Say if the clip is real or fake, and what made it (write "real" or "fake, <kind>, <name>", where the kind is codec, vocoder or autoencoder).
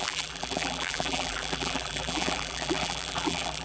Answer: fake, vocoder, BigVGAN v2